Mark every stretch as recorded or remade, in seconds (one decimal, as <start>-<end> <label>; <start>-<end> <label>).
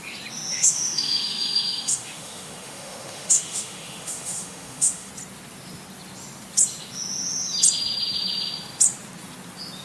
0.0-0.5 recorded; 0.5-5.1 remade; 5.1-9.8 recorded